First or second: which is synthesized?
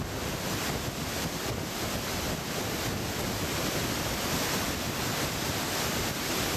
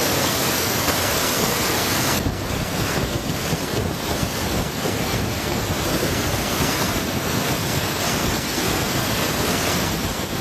second